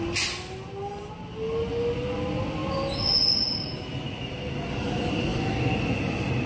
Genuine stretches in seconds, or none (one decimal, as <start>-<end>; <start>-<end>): 0.0-6.5